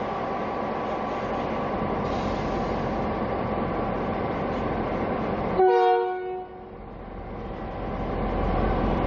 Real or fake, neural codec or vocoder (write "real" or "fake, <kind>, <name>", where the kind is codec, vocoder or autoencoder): real